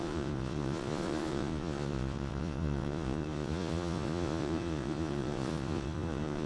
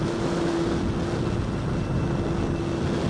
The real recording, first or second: second